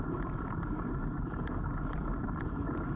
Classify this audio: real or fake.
fake